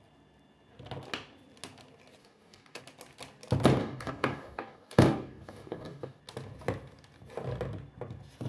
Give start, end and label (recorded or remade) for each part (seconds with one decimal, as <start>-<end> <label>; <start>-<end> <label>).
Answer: 0.0-2.2 recorded; 2.2-2.8 remade; 2.8-3.8 recorded; 3.8-6.2 remade; 6.2-8.5 recorded

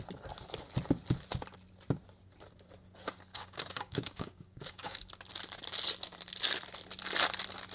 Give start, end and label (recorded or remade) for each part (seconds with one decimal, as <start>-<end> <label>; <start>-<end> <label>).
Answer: 0.0-3.3 recorded; 3.3-5.0 remade; 5.0-7.7 recorded

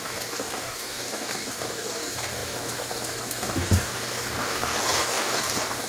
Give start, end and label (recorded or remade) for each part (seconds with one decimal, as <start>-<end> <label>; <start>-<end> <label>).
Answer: 0.0-5.9 remade